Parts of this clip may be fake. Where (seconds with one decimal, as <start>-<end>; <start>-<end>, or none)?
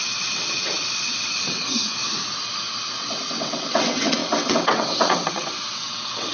0.0-2.0; 2.9-6.3